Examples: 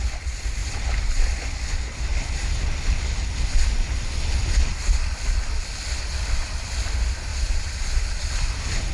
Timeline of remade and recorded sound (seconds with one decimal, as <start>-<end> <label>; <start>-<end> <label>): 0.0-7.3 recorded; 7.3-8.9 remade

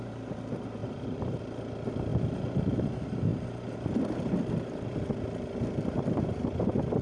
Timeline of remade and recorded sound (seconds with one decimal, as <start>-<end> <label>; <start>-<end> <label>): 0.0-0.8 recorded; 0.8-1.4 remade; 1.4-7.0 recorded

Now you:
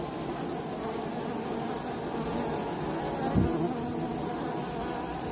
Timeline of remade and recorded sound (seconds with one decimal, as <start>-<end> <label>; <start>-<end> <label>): 0.0-5.3 recorded

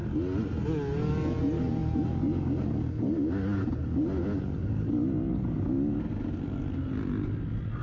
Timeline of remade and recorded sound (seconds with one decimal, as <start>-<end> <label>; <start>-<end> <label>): 0.0-7.8 recorded

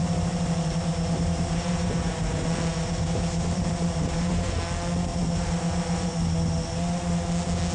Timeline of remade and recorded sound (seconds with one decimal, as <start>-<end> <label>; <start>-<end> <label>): 0.0-4.6 remade; 4.6-5.1 recorded; 5.1-6.1 remade; 6.1-7.7 recorded